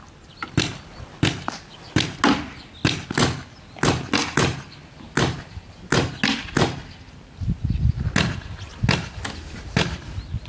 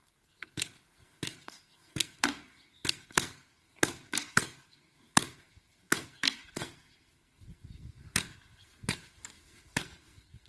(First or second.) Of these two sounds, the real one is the first